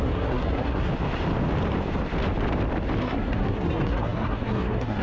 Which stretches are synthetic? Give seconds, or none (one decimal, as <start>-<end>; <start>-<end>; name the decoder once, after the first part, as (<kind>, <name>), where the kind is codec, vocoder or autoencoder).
0.0-0.9 (codec, SNAC); 3.0-5.0